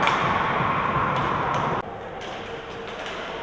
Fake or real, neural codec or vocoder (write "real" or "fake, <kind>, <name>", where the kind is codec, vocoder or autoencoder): real